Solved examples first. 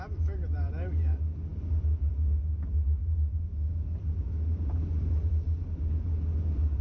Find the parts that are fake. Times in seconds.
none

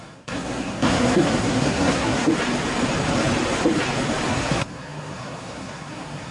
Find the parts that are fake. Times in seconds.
0.0-2.3; 4.3-6.3

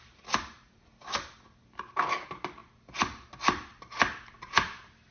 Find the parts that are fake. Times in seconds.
none

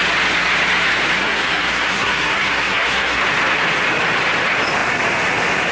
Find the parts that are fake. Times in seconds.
1.2-3.2

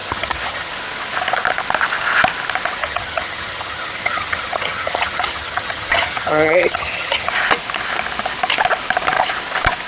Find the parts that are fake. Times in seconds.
0.0-0.7; 2.8-7.3

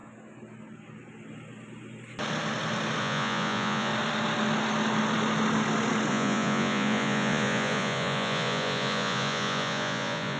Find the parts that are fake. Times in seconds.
3.0-3.9; 6.1-10.4

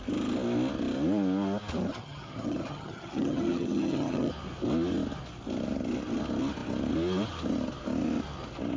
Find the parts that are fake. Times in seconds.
1.9-4.3

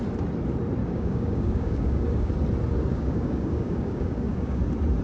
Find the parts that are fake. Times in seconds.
0.8-2.3; 2.9-4.6